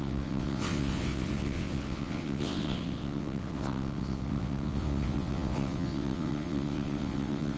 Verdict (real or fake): fake